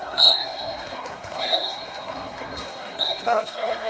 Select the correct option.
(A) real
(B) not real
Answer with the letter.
B